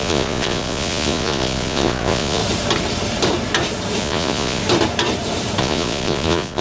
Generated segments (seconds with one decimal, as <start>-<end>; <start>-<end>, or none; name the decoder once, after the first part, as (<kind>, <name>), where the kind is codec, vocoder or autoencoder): 0.0-2.4 (vocoder, Vocos); 4.0-4.6; 5.6-6.6